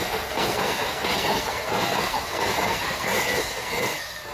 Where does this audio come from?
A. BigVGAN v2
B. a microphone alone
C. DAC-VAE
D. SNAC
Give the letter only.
D